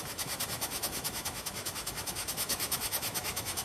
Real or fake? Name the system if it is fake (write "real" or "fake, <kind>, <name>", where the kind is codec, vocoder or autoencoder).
fake, autoencoder, DAC-VAE